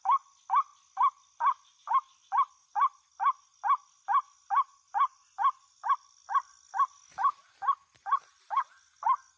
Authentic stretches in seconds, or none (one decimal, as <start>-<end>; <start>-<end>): 0.0-9.4